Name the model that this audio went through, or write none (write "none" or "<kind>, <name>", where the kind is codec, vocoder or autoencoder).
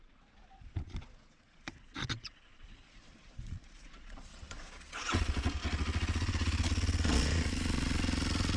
vocoder, Vocos